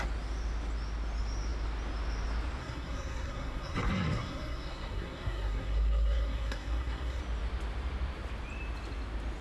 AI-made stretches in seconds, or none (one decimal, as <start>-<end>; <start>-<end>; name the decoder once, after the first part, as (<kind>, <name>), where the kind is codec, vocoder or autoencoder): 2.6-7.2 (codec, SNAC)